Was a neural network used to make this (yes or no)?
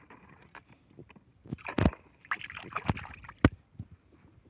no